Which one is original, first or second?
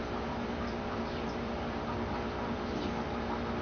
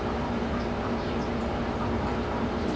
first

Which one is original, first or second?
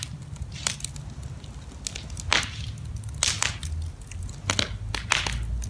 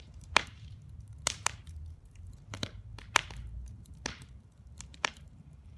first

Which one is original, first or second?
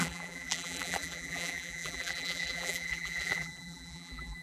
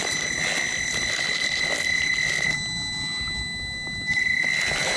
second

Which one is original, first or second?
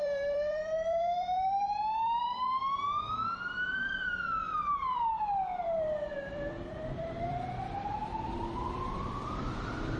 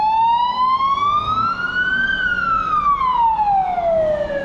second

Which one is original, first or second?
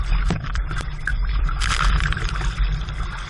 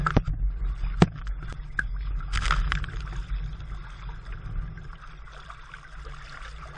second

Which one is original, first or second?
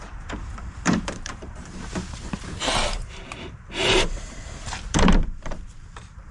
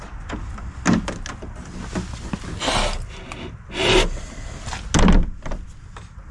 second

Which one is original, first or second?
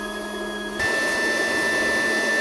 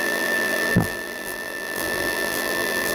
first